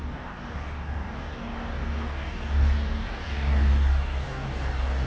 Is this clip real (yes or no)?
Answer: no